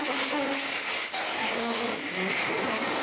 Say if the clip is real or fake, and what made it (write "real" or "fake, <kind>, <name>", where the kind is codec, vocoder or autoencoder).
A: fake, codec, DAC